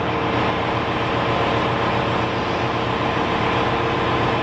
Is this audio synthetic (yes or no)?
no